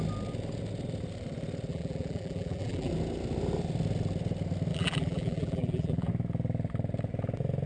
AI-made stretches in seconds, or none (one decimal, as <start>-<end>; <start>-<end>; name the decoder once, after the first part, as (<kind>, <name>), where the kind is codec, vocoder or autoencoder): 1.7-2.9 (vocoder, BigVGAN v2); 4.7-6.1